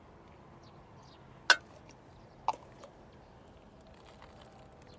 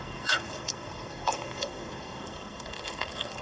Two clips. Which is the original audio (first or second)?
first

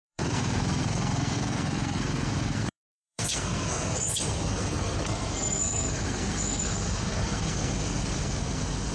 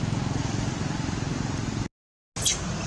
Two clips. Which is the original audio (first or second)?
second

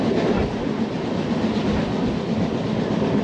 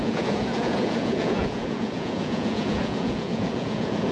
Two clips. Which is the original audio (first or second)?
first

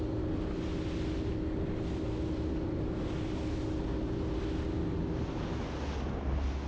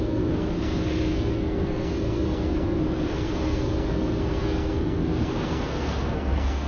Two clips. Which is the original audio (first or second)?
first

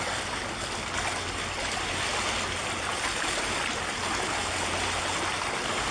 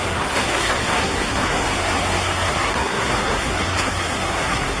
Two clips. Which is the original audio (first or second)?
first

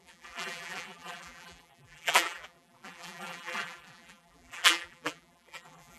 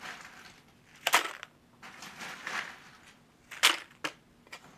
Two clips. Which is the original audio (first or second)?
second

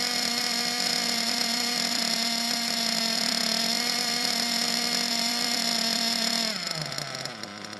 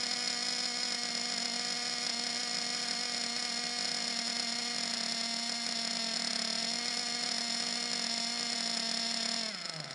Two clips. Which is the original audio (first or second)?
second